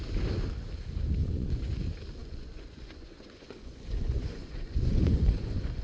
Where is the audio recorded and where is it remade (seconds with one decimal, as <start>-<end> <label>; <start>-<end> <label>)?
0.0-1.2 recorded; 1.2-1.8 remade; 1.8-2.2 recorded; 2.2-5.8 remade